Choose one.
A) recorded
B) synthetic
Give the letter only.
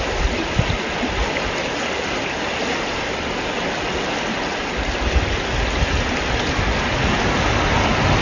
A